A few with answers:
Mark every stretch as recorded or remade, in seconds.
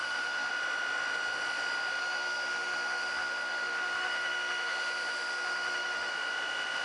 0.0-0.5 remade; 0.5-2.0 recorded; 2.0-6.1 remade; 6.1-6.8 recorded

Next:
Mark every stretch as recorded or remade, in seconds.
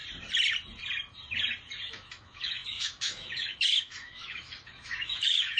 0.0-1.9 recorded; 1.9-5.6 remade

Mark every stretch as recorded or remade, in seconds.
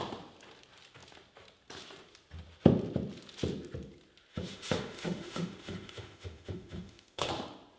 0.0-4.3 recorded; 4.3-7.3 remade; 7.3-7.8 recorded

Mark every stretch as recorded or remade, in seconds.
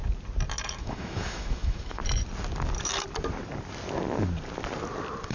0.0-0.8 recorded; 0.8-2.0 remade; 2.0-5.3 recorded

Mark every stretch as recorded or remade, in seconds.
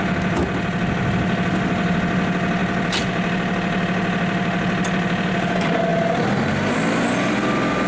0.0-7.9 recorded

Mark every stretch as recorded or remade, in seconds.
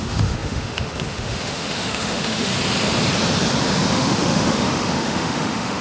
0.0-2.5 remade; 2.5-3.9 recorded; 3.9-5.8 remade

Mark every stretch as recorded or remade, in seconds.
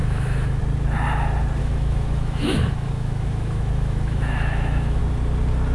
0.0-0.6 remade; 0.6-1.6 recorded; 1.6-5.0 remade; 5.0-5.7 recorded